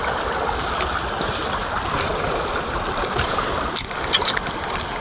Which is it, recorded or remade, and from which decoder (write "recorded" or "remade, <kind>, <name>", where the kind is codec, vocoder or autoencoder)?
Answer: recorded